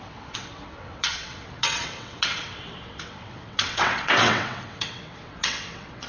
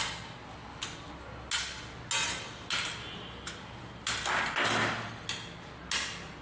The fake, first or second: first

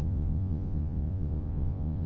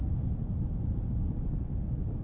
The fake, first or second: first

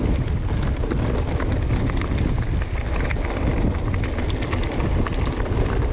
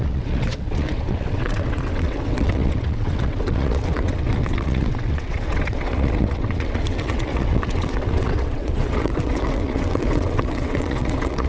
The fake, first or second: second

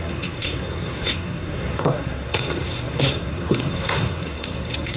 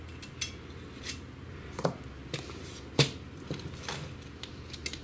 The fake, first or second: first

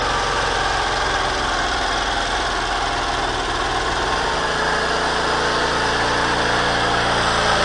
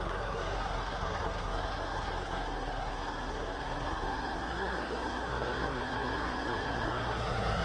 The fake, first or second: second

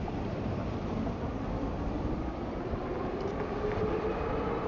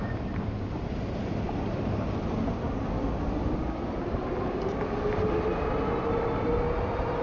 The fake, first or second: first